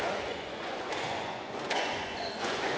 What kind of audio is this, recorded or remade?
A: remade